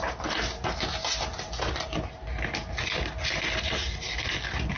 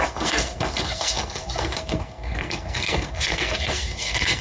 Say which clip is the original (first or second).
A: first